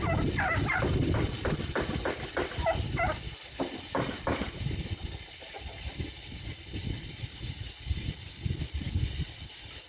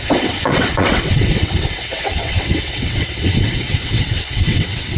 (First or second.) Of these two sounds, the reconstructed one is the second